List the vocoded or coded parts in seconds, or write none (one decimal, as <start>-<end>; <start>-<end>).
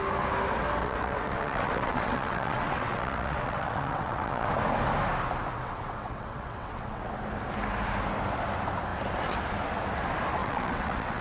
0.8-4.5; 5.5-7.1; 10.4-11.2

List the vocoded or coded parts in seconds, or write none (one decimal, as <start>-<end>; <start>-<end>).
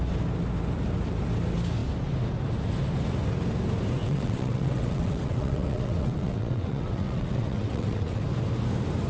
4.0-8.2